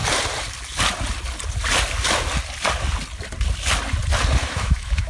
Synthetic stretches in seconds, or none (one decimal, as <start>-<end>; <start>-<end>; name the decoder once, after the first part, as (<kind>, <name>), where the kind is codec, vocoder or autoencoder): 4.4-5.1 (autoencoder, DAC-VAE)